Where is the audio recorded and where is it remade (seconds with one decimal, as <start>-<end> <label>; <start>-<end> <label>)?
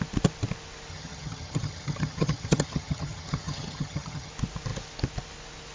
0.0-0.9 recorded; 0.9-4.3 remade; 4.3-5.7 recorded